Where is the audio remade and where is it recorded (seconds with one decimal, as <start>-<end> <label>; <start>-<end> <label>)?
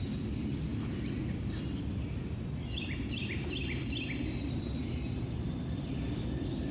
0.0-6.7 recorded